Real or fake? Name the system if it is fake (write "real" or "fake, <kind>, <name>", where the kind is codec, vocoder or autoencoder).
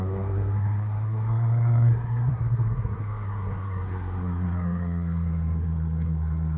fake, codec, SNAC